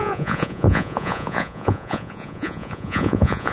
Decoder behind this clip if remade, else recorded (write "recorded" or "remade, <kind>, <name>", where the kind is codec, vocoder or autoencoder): remade, vocoder, Vocos